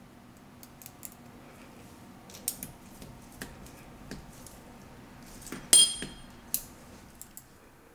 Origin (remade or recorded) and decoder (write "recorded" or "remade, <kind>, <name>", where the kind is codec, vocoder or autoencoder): recorded